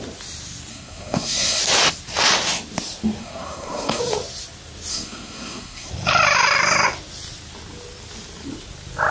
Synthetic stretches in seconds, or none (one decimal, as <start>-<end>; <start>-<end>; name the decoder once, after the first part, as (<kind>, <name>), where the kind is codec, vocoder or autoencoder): 0.7-1.6 (codec, SNAC); 3.2-4.0; 4.9-5.9